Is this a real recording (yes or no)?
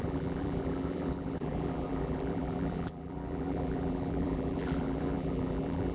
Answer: no